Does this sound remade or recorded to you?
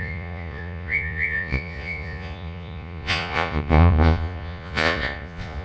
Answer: remade